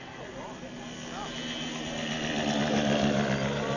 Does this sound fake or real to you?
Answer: real